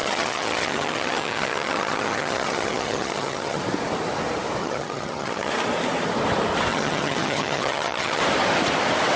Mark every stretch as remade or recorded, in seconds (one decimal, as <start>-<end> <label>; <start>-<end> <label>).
0.0-3.6 remade; 3.6-4.6 recorded; 4.6-5.5 remade; 5.5-6.7 recorded; 6.7-8.2 remade; 8.2-9.2 recorded